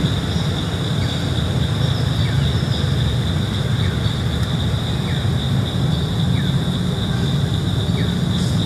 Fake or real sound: real